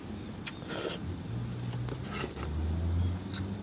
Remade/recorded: recorded